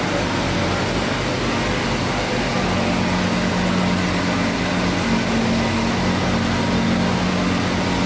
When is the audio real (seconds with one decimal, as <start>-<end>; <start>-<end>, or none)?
0.0-8.1